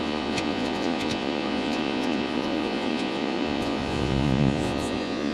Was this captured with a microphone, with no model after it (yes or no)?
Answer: no